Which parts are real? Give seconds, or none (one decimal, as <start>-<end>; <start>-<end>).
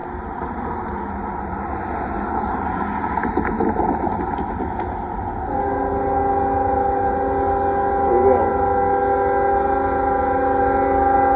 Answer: 0.0-11.4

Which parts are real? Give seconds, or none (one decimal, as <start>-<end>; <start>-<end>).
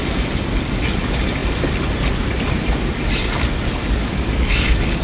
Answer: 0.0-3.7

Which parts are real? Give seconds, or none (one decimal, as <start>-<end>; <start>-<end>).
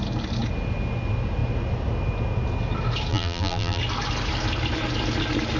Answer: 0.0-3.1; 3.8-5.6